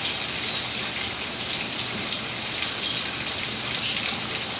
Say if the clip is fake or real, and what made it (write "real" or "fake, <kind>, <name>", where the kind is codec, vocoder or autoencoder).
real